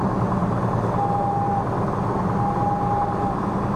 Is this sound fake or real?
real